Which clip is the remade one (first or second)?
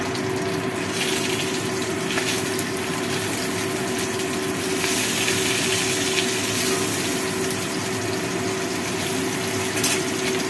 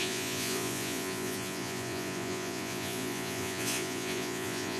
second